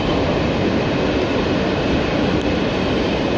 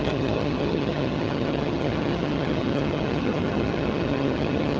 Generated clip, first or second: second